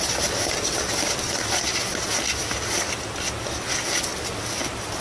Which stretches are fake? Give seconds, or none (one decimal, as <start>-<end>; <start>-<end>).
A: none